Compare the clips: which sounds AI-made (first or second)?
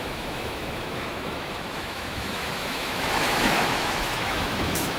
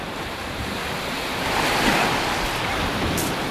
first